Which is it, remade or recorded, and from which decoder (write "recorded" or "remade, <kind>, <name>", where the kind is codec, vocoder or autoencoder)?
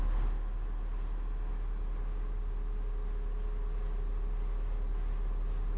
recorded